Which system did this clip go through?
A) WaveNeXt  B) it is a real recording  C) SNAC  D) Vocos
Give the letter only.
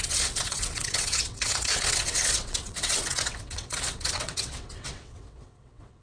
A